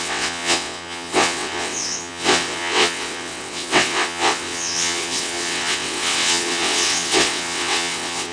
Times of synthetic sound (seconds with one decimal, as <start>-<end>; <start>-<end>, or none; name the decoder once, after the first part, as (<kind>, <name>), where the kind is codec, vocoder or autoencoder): 0.0-8.3 (vocoder, WaveNeXt)